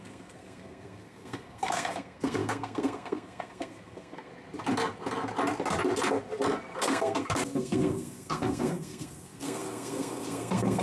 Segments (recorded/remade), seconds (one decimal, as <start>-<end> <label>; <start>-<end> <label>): 0.0-4.3 remade; 4.3-6.8 recorded; 6.8-10.8 remade

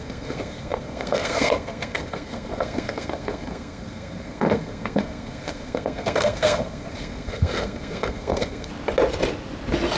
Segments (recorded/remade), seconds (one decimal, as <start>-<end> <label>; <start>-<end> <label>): 0.0-8.7 remade; 8.7-10.0 recorded

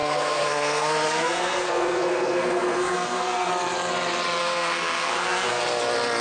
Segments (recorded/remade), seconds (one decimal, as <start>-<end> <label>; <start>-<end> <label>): 0.0-3.5 remade; 3.5-4.4 recorded; 4.4-5.6 remade; 5.6-6.2 recorded

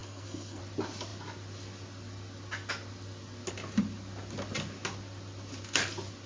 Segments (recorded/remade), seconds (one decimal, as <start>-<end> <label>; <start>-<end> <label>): 0.0-0.6 remade; 0.6-6.3 recorded

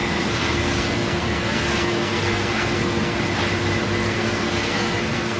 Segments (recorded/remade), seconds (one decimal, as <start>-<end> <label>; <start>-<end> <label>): 0.0-3.2 remade; 3.2-4.0 recorded; 4.0-5.4 remade

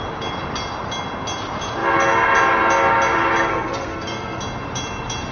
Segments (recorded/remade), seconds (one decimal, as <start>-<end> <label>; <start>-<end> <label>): 0.0-3.5 recorded; 3.5-4.4 remade; 4.4-5.3 recorded